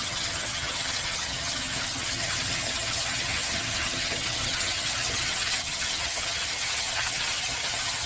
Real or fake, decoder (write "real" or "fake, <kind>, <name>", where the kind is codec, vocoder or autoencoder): fake, vocoder, HiFi-GAN